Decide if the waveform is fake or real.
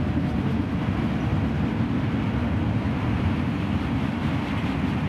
real